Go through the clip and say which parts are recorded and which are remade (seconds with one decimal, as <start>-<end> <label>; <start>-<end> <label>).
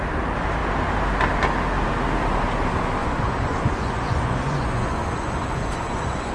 0.0-3.0 recorded; 3.0-6.3 remade